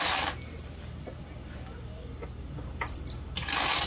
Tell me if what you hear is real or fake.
real